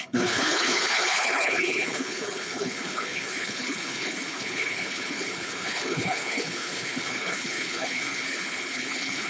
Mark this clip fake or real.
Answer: fake